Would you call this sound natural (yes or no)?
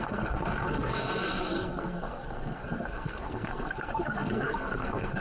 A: no